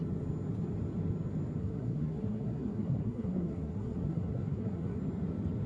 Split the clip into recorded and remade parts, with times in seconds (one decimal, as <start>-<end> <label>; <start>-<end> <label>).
0.0-1.6 recorded; 1.6-5.0 remade; 5.0-5.7 recorded